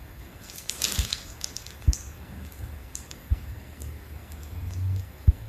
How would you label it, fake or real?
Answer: fake